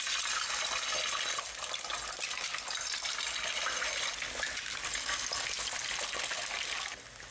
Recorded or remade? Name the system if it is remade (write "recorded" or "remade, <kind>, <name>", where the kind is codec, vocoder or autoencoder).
recorded